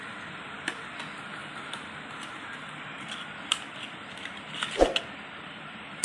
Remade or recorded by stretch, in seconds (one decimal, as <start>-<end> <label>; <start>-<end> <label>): 0.0-6.0 recorded